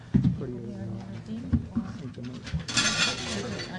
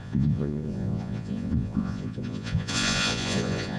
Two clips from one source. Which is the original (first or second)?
first